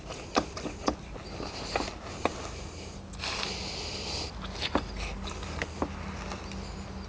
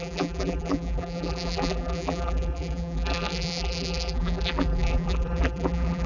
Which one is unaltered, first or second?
first